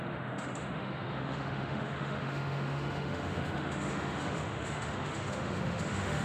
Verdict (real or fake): fake